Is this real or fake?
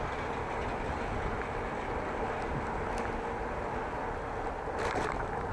real